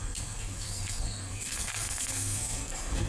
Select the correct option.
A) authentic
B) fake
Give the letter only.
B